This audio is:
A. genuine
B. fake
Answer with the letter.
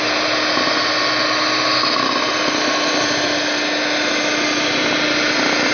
A